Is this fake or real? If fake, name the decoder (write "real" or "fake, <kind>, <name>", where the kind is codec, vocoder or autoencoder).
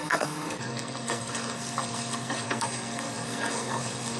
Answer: fake, codec, SNAC